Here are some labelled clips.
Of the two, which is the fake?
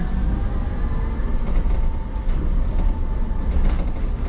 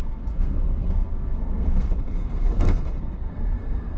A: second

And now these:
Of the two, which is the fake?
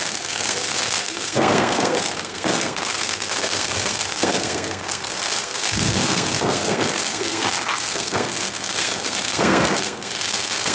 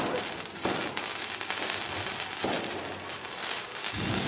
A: first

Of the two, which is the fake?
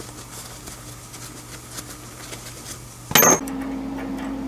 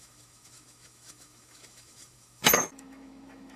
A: second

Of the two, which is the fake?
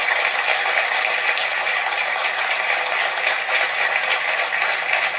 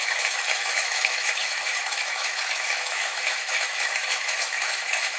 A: second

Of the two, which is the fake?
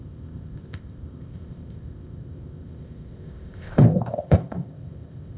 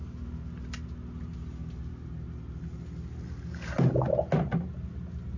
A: first